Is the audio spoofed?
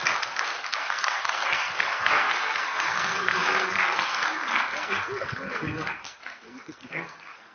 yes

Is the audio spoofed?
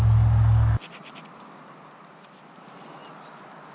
no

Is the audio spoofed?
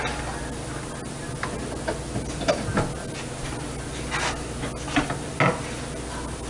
no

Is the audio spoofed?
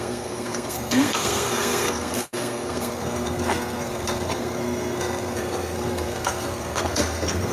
yes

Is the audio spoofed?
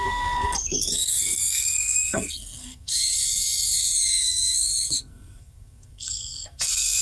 yes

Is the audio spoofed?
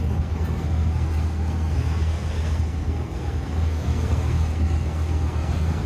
yes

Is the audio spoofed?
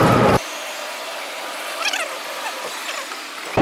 no